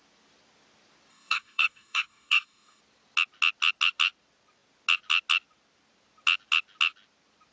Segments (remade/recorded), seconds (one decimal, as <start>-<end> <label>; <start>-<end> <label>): 0.0-1.1 recorded; 1.1-2.8 remade; 2.8-7.5 recorded